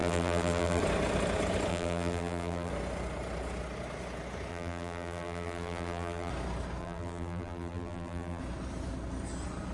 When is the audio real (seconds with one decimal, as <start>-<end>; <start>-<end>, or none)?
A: 0.8-1.7; 2.7-4.5; 6.3-6.8; 8.4-9.7